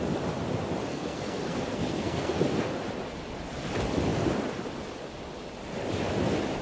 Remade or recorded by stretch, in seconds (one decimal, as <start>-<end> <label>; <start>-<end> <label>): 0.0-0.9 recorded; 0.9-2.4 remade; 2.4-6.6 recorded